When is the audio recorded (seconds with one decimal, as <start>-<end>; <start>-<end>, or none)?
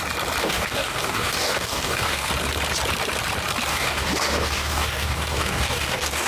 0.0-0.4; 2.3-3.7